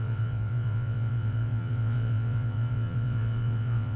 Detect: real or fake fake